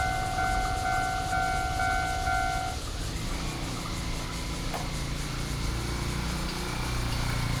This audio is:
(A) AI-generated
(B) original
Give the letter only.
B